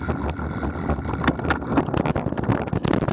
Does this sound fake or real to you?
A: real